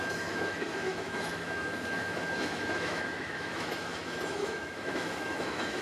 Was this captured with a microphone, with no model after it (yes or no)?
no